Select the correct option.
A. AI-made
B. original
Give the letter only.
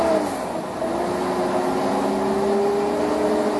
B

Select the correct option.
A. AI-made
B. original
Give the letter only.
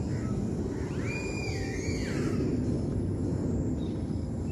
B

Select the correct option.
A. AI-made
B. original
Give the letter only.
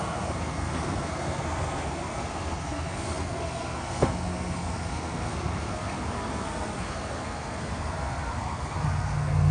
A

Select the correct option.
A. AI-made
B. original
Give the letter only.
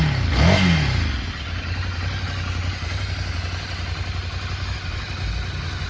B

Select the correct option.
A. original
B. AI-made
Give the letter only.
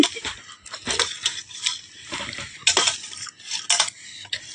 A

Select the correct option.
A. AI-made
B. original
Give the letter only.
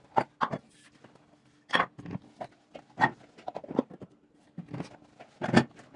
B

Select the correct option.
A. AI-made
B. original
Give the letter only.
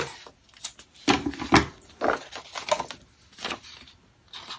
B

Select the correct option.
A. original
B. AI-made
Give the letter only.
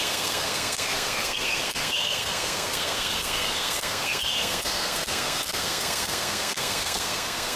B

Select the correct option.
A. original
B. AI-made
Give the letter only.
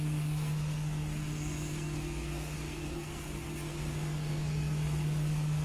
B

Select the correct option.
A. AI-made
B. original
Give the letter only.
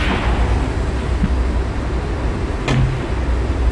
B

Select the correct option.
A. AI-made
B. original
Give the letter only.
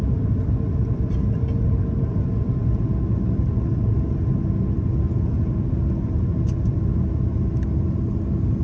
B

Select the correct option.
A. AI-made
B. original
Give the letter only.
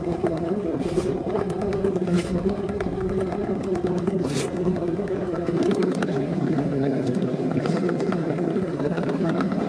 A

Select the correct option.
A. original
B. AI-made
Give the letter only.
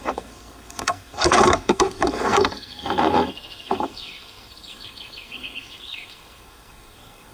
B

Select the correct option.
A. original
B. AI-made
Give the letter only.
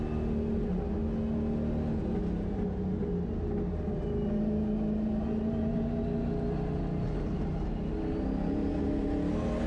A